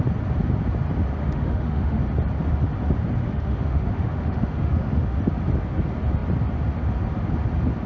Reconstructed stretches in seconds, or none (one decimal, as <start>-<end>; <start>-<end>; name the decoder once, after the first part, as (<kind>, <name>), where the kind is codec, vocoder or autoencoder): 1.2-2.0 (autoencoder, DAC-VAE); 3.2-5.2